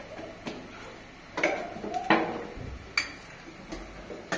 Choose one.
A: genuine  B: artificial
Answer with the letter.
A